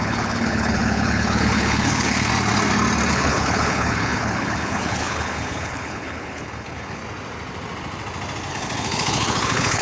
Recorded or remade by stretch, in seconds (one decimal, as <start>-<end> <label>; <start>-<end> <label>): 0.0-2.3 remade; 2.3-3.1 recorded; 3.1-7.0 remade; 7.0-8.5 recorded; 8.5-9.8 remade